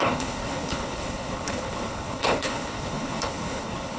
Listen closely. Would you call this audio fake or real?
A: fake